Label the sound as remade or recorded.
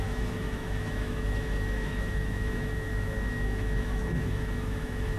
remade